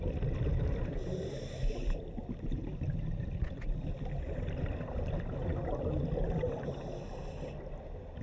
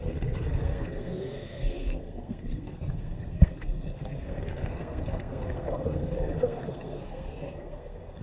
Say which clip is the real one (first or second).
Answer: first